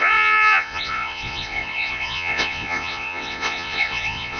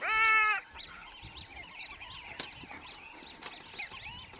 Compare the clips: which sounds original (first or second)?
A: second